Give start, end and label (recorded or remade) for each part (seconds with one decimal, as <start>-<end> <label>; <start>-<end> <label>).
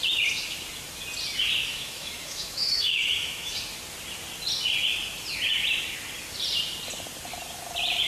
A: 0.0-1.6 recorded; 1.6-3.5 remade; 3.5-8.1 recorded